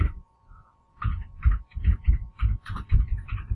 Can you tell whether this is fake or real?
fake